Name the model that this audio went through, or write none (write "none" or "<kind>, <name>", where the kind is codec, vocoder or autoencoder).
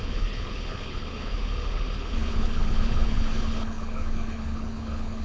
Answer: codec, HILCodec